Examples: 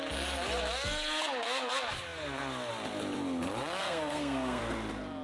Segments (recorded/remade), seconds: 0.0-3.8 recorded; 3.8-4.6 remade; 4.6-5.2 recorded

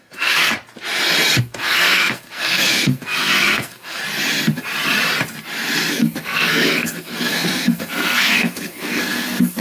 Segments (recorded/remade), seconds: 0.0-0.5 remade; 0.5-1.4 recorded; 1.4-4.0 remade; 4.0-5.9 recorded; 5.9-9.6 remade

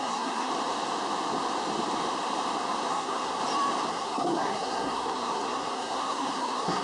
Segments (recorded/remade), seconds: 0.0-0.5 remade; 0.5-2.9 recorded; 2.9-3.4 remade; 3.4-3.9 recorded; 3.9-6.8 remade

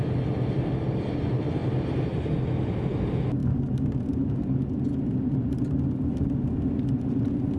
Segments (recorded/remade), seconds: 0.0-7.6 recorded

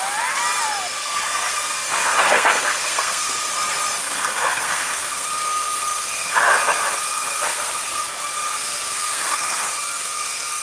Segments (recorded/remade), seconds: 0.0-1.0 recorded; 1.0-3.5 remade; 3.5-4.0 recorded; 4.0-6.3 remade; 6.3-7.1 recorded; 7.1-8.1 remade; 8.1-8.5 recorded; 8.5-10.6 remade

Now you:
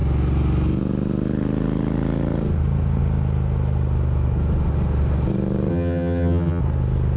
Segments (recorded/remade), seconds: 0.0-5.7 recorded; 5.7-6.6 remade; 6.6-7.2 recorded

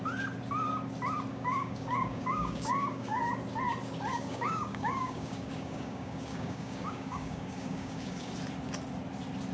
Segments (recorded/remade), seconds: 0.0-1.3 recorded; 1.3-3.2 remade; 3.2-4.1 recorded; 4.1-8.3 remade; 8.3-9.5 recorded